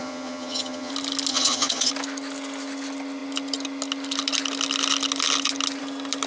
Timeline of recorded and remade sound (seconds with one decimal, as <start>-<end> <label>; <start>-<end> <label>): 0.0-0.9 remade; 0.9-1.3 recorded; 1.3-1.9 remade; 1.9-6.3 recorded